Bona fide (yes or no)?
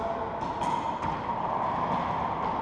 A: yes